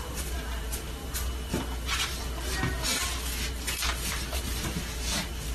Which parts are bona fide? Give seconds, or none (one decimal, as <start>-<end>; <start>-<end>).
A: 1.5-4.1